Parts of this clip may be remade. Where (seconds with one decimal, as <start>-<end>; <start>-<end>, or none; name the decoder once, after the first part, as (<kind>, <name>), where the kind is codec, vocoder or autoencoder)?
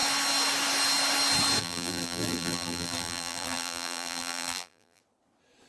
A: 1.6-5.0 (vocoder, BigVGAN v2)